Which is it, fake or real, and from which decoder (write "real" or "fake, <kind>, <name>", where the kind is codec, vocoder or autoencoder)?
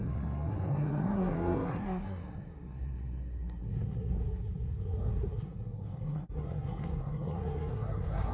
fake, codec, SNAC